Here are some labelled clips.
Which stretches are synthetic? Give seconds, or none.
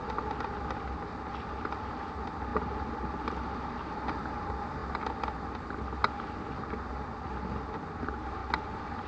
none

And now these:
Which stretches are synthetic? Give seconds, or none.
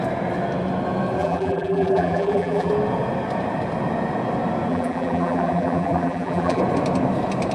1.2-2.7 (vocoder, BigVGAN v2); 4.7-6.6